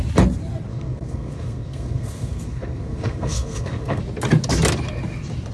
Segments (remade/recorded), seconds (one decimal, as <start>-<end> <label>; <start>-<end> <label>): 0.0-0.7 recorded; 0.7-4.0 remade; 4.0-5.5 recorded